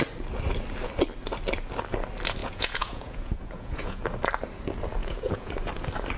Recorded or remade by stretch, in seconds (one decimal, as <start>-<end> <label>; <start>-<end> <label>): 0.0-2.4 recorded; 2.4-4.0 remade; 4.0-5.0 recorded; 5.0-5.5 remade; 5.5-6.2 recorded